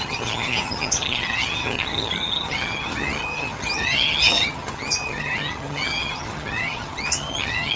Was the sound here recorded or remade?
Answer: remade